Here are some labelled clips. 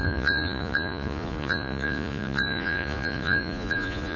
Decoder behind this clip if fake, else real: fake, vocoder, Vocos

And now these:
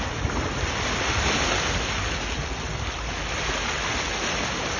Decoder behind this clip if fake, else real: real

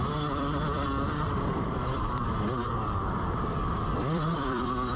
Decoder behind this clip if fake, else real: fake, vocoder, BigVGAN v2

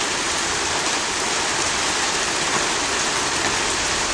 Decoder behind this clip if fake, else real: real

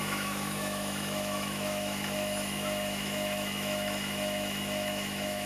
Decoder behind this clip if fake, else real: fake, autoencoder, DAC-VAE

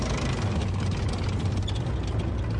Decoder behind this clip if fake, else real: real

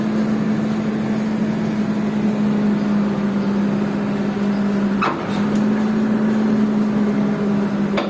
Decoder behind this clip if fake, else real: real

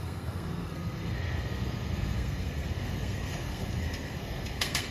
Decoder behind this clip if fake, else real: fake, codec, SNAC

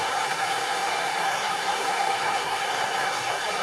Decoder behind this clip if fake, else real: fake, codec, SNAC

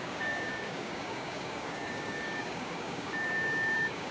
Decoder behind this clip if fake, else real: fake, codec, DAC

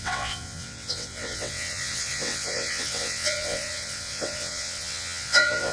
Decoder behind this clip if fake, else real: fake, vocoder, WaveNeXt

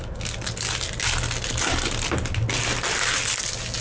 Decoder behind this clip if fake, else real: real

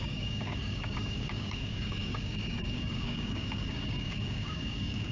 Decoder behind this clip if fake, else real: fake, codec, DAC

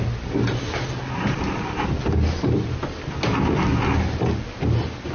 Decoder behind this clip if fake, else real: real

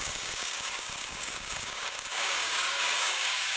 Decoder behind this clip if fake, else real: fake, codec, DAC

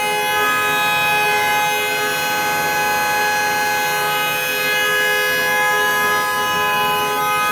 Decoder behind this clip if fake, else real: real